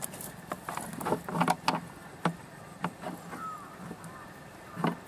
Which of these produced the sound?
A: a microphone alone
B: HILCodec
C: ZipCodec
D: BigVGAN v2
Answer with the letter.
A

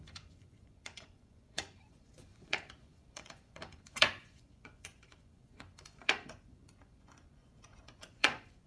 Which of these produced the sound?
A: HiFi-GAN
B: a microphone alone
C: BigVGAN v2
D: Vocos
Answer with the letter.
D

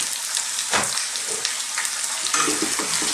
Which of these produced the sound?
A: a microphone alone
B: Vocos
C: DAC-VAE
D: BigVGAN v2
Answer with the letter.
A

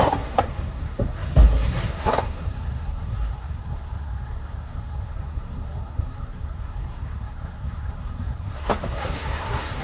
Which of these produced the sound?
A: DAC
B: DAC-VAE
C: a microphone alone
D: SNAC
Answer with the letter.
D